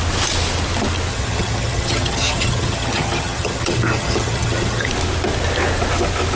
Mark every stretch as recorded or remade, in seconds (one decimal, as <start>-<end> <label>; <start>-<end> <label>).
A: 0.0-1.1 recorded; 1.1-4.9 remade; 4.9-6.4 recorded